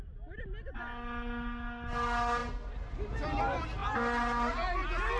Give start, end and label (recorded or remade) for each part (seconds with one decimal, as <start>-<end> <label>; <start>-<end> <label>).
0.0-5.2 recorded